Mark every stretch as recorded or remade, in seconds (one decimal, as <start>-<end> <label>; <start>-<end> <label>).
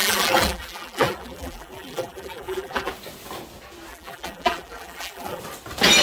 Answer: 0.0-2.9 remade; 2.9-3.9 recorded; 3.9-5.4 remade; 5.4-6.0 recorded